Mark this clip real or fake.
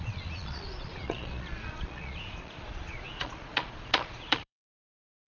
fake